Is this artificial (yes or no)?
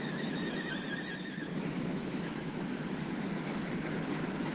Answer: yes